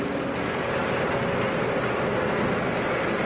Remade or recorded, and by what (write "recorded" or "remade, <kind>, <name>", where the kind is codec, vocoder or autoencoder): recorded